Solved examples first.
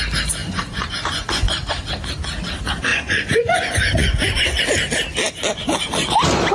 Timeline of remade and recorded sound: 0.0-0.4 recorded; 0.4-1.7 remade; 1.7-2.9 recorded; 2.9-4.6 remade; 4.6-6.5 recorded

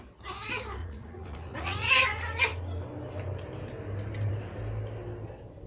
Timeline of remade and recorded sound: 0.0-0.8 recorded; 0.8-1.9 remade; 1.9-5.7 recorded

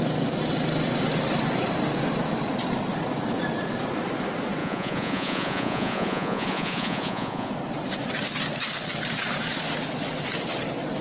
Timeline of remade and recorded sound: 0.0-4.6 recorded; 4.6-7.5 remade; 7.5-11.0 recorded

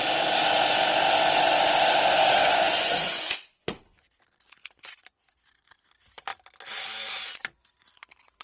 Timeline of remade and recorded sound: 0.0-2.4 recorded; 2.4-3.8 remade; 3.8-8.4 recorded

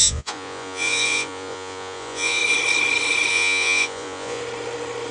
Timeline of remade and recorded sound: 0.0-2.4 remade; 2.4-3.3 recorded; 3.3-4.4 remade; 4.4-5.1 recorded

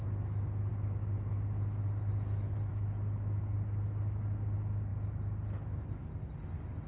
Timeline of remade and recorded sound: 0.0-6.9 recorded